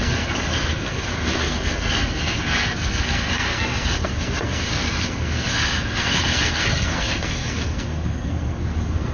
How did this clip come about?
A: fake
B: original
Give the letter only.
A